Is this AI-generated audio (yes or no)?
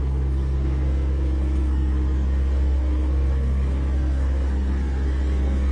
yes